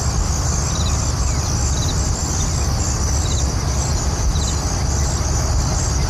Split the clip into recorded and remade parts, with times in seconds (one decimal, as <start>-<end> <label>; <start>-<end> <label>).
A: 0.0-6.1 recorded